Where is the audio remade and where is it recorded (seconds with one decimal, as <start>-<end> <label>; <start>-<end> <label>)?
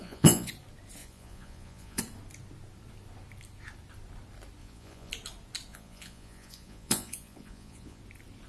0.0-0.5 remade; 0.5-1.0 recorded; 1.0-2.0 remade; 2.0-4.6 recorded; 4.6-5.1 remade; 5.1-5.7 recorded; 5.7-8.0 remade; 8.0-8.5 recorded